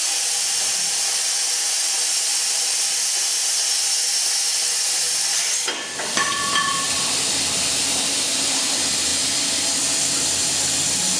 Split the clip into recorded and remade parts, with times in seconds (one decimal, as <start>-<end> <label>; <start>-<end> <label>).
0.0-11.2 recorded